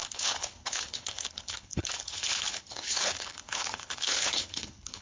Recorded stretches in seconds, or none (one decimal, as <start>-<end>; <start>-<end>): none